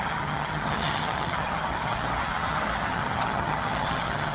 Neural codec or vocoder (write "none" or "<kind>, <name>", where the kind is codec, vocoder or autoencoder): vocoder, HiFi-GAN